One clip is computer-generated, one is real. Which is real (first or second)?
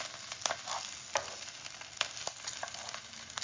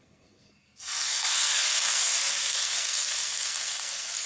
first